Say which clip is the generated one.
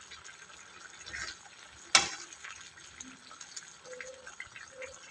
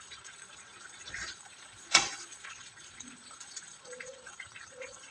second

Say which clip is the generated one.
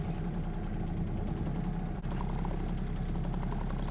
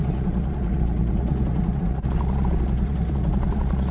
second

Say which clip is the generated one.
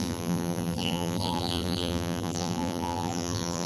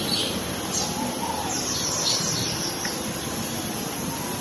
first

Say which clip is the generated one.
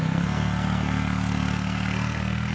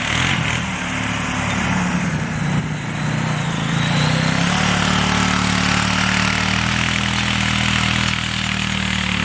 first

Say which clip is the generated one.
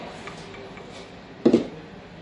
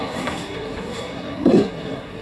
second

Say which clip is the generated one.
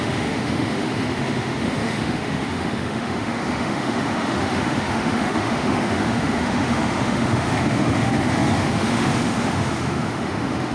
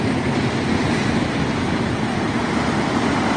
first